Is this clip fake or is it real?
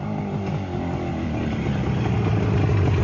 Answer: real